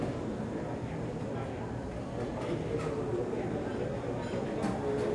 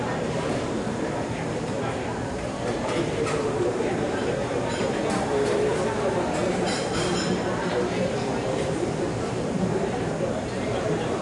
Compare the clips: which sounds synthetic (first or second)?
second